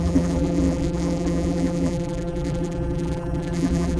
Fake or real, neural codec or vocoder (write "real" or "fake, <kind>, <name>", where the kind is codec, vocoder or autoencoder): fake, vocoder, BigVGAN v2